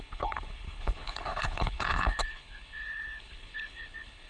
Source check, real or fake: fake